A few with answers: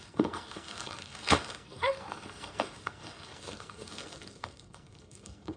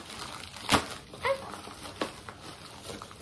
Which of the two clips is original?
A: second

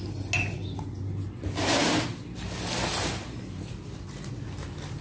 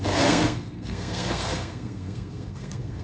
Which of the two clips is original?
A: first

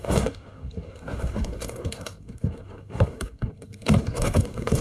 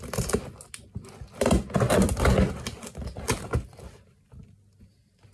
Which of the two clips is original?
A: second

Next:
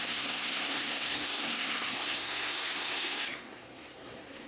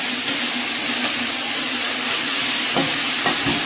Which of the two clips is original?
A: second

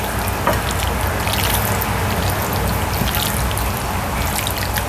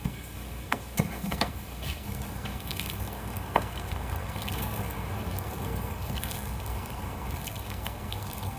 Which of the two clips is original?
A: first